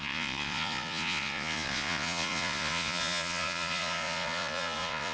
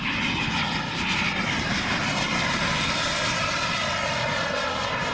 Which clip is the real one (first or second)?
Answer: second